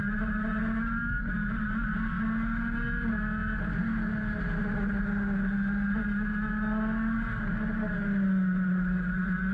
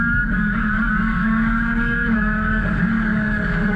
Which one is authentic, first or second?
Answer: first